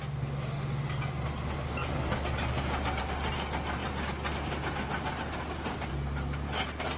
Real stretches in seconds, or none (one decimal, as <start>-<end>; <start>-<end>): 0.0-7.0